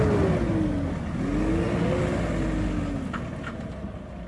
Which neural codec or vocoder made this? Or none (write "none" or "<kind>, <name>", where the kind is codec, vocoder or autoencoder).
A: none